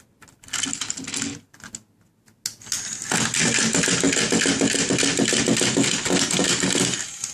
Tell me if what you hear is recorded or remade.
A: recorded